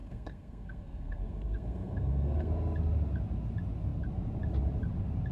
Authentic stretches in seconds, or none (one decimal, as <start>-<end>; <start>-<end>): 2.5-5.3